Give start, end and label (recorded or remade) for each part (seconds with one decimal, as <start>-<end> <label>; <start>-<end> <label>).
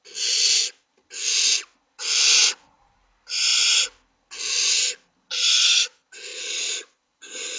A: 0.0-6.3 recorded; 6.3-7.6 remade